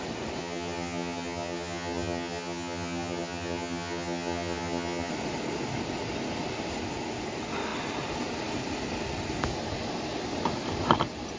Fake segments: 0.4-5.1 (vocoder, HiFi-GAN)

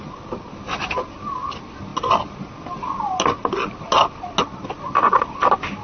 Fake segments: none

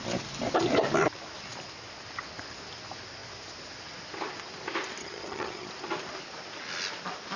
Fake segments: 5.0-5.7 (vocoder, HiFi-GAN)

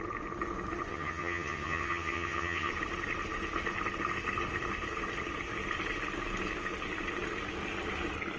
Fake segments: 0.9-2.7 (vocoder, HiFi-GAN)

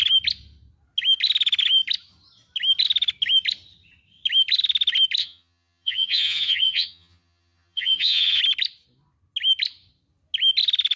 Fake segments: 5.2-8.4 (vocoder, HiFi-GAN)

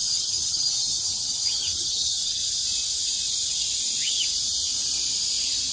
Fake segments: 0.0-2.5 (vocoder, HiFi-GAN)

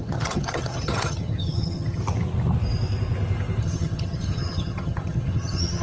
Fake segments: 0.0-2.0 (vocoder, HiFi-GAN); 3.6-5.8

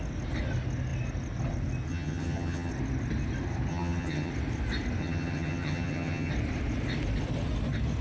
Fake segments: 1.9-2.7 (vocoder, HiFi-GAN); 3.7-4.3; 5.0-6.3